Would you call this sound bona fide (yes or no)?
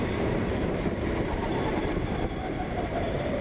no